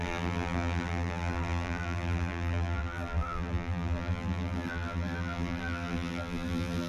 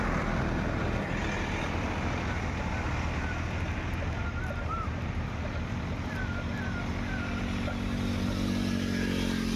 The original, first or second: second